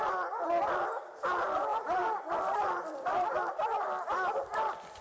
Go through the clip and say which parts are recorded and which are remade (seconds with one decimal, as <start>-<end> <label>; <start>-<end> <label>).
0.0-5.0 recorded